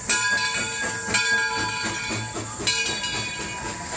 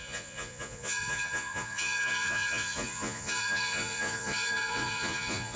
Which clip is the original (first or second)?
first